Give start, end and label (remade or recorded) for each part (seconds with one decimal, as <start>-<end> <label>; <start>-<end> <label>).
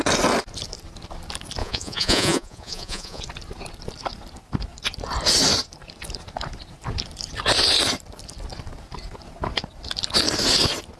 0.0-1.6 recorded; 1.6-3.2 remade; 3.2-11.0 recorded